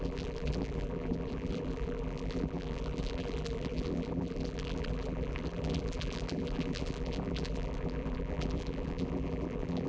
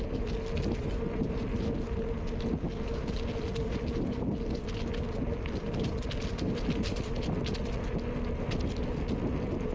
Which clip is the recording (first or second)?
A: second